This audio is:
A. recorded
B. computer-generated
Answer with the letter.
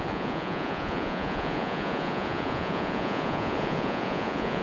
B